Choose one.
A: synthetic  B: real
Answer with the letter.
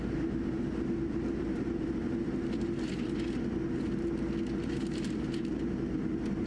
B